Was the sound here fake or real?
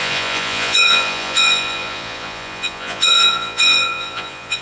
fake